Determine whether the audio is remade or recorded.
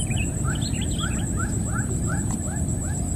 recorded